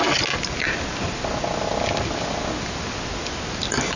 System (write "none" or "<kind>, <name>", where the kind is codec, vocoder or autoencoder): none